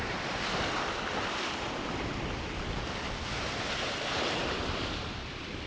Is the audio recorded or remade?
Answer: recorded